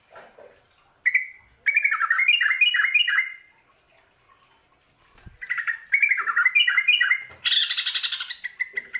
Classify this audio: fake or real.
real